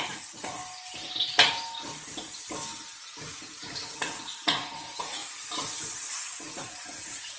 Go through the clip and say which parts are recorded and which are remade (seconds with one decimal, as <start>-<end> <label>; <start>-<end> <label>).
0.0-0.6 remade; 0.6-3.2 recorded; 3.2-5.2 remade; 5.2-5.8 recorded; 5.8-7.4 remade